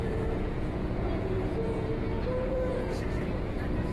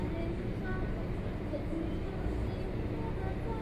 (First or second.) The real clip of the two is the second